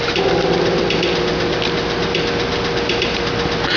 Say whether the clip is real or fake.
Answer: real